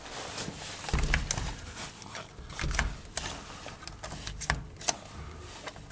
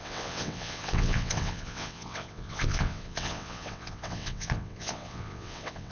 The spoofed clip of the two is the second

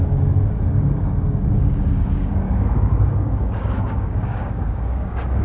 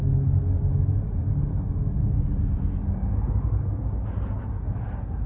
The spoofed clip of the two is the first